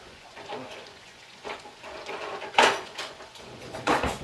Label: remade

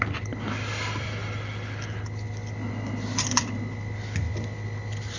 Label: recorded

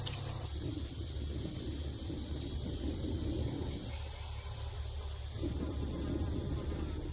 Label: recorded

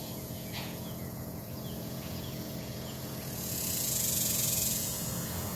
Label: remade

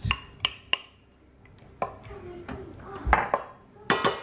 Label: recorded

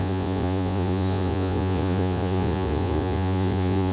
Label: remade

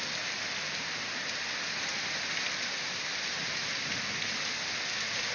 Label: recorded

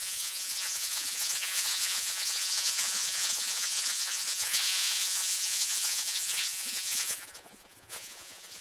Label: remade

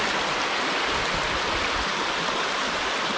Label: recorded